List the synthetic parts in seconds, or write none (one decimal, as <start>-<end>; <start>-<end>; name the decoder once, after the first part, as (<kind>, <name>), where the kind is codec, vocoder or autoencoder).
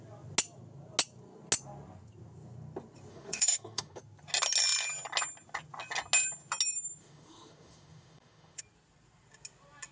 3.1-4.0 (autoencoder, DAC-VAE); 7.0-8.6